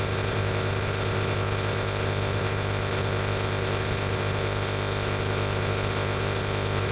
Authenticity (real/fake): fake